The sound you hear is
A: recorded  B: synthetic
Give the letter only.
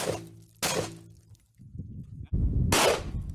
A